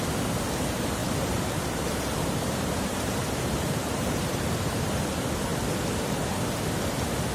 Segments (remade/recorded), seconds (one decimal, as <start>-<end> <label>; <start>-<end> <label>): 0.0-1.0 recorded; 1.0-4.9 remade; 4.9-7.3 recorded